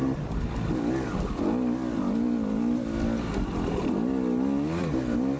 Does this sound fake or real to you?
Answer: real